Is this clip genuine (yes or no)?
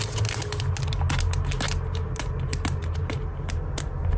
yes